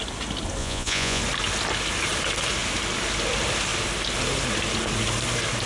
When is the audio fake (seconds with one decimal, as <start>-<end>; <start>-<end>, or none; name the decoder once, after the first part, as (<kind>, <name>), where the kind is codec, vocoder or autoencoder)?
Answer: 0.6-1.2 (vocoder, Vocos)